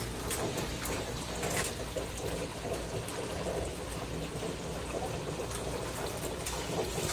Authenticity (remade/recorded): recorded